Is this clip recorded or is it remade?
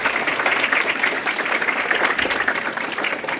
remade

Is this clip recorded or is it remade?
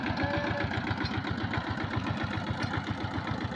recorded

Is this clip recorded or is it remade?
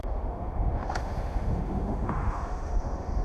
remade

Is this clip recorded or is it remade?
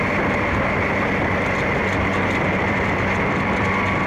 recorded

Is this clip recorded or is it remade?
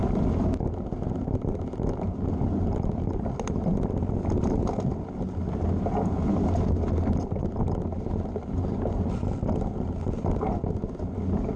recorded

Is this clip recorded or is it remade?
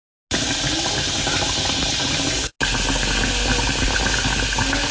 recorded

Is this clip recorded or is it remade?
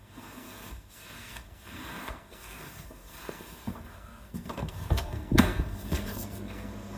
remade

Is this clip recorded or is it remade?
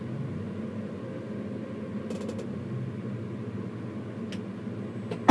recorded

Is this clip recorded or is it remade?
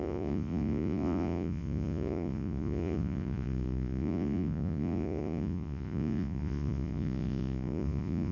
remade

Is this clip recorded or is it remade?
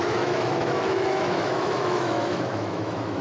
remade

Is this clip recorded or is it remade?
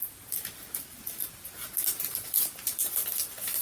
remade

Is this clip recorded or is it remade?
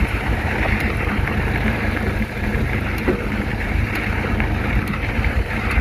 remade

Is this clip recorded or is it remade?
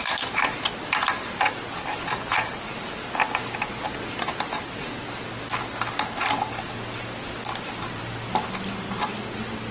recorded